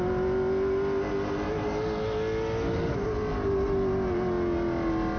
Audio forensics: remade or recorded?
recorded